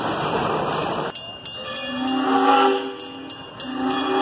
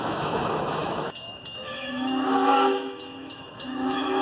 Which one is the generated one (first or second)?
second